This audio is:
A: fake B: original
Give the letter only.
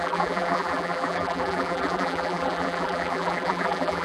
A